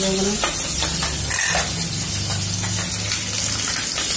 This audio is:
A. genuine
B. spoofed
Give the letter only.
A